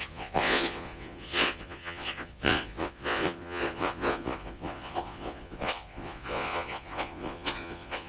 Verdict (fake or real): fake